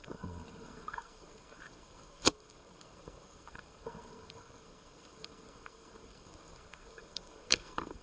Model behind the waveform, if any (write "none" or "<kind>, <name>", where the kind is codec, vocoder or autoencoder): codec, SNAC